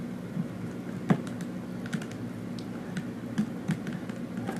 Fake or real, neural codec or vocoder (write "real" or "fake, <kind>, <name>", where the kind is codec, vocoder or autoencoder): real